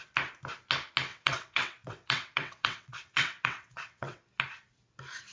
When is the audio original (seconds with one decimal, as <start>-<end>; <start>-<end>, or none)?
0.0-1.1; 4.2-5.3